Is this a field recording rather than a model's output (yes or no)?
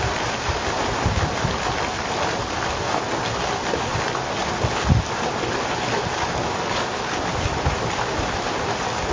yes